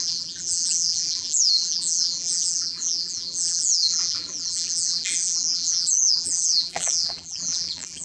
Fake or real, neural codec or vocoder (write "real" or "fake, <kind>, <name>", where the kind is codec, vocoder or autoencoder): fake, vocoder, BigVGAN v2